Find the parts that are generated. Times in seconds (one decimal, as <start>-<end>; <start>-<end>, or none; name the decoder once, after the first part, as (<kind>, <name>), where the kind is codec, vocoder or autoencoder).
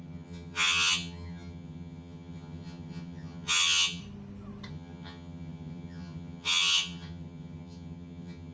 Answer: 0.0-4.0 (vocoder, HiFi-GAN); 4.7-8.5